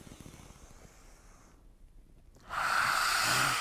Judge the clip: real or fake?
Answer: real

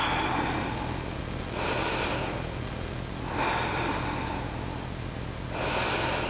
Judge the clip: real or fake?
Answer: real